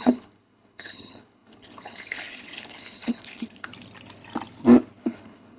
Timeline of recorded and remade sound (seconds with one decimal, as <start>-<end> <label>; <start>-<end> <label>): 0.0-3.7 remade; 3.7-5.0 recorded; 5.0-5.6 remade